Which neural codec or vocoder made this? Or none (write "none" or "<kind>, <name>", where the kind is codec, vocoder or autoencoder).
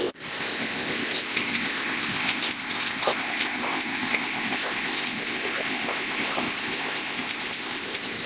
codec, ZipCodec